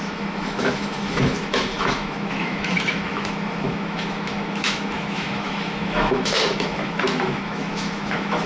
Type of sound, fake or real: fake